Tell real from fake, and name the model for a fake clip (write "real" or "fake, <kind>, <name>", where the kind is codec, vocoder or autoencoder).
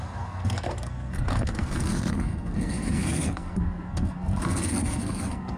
fake, codec, SNAC